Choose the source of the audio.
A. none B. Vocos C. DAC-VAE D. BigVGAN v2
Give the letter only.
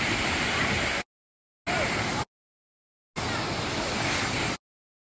A